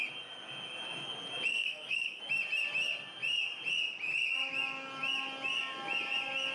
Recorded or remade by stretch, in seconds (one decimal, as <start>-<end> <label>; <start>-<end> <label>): 0.0-1.5 recorded; 1.5-2.2 remade; 2.2-6.5 recorded